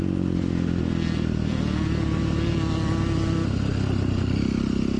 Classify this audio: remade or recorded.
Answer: recorded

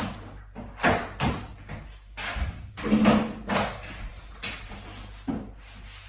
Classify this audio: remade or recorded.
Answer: recorded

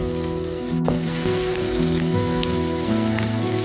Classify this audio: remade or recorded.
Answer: remade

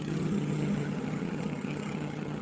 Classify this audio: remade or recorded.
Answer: remade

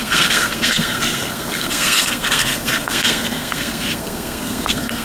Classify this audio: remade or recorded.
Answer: remade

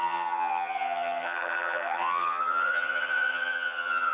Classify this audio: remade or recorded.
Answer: remade